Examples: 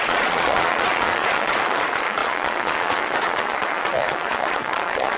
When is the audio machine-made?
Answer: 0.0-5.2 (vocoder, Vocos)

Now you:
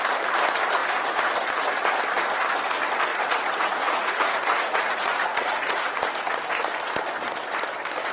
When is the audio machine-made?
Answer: 3.1-6.4 (vocoder, Vocos)

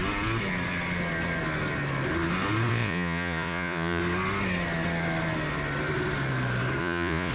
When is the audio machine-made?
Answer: 2.7-4.0 (vocoder, Vocos); 6.8-7.3